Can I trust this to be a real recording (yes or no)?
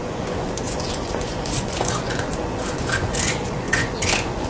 no